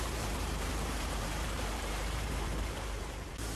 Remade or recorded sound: remade